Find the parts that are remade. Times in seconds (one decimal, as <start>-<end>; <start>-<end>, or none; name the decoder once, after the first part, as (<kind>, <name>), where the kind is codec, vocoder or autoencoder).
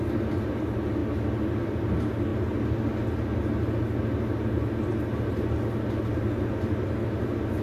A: none